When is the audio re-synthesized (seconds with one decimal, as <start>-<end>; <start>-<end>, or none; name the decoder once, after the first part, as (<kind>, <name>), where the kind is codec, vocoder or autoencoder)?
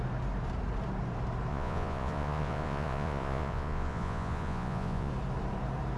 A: 1.5-5.1 (vocoder, Vocos)